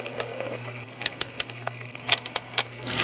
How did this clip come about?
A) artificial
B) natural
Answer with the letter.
A